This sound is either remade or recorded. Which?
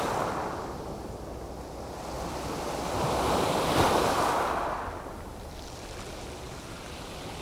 recorded